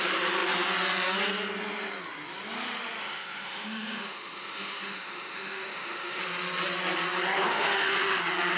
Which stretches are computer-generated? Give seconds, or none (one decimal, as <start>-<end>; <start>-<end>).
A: 3.0-6.2; 7.5-8.2